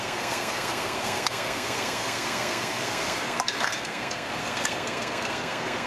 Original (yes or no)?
no